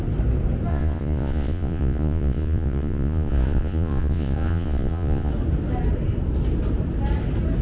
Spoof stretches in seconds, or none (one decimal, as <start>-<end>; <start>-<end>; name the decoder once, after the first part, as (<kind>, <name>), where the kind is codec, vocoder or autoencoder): 0.7-5.3 (vocoder, Vocos)